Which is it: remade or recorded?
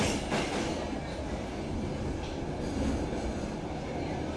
recorded